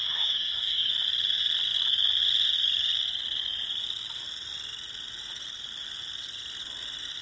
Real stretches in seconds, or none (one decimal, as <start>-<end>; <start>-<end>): 0.9-7.2